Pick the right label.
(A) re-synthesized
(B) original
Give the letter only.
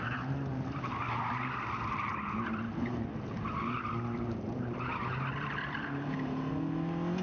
B